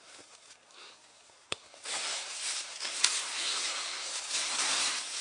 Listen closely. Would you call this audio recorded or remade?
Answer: remade